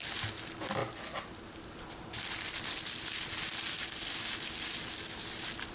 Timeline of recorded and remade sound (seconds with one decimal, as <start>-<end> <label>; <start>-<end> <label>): 0.0-5.7 recorded